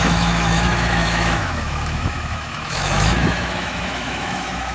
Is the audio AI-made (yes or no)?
yes